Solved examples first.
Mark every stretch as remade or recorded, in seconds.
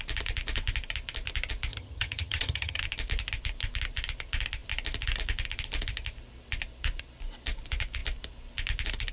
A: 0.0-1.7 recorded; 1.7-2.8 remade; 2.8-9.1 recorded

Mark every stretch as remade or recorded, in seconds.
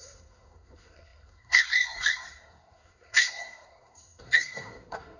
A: 0.0-5.2 remade